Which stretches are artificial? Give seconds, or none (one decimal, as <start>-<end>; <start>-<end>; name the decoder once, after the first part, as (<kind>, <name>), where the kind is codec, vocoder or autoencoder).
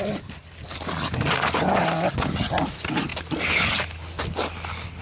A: none